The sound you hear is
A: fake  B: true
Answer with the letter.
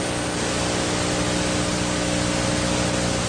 B